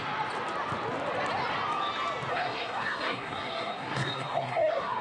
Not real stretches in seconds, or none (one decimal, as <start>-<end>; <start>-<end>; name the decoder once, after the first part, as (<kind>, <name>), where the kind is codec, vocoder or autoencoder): 2.3-5.0 (codec, SNAC)